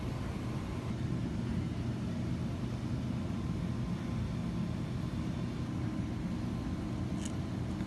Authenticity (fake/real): real